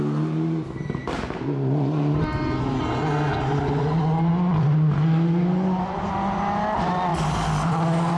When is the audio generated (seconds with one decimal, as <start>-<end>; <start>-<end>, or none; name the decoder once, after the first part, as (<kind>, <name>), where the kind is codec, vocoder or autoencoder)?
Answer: 1.0-3.6 (vocoder, BigVGAN v2)